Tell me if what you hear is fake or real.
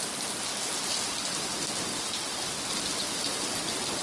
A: real